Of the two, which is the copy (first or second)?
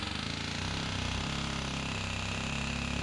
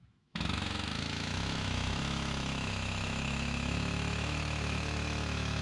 second